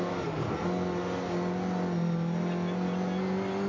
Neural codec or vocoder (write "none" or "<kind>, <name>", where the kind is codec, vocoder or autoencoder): none